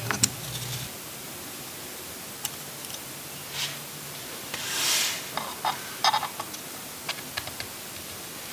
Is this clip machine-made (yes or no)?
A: no